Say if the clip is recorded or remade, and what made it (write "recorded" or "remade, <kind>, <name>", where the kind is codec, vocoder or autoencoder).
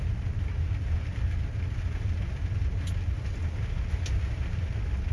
recorded